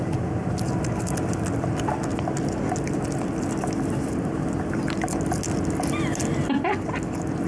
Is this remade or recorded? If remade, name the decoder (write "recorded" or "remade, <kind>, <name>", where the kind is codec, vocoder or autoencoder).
recorded